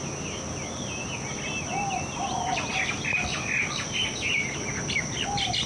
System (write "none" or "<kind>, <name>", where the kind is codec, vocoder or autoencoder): none